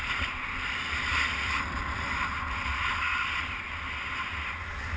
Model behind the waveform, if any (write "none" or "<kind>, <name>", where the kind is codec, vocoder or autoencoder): none